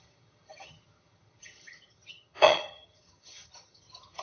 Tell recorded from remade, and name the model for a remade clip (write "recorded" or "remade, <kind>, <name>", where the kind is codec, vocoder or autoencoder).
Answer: remade, vocoder, HiFi-GAN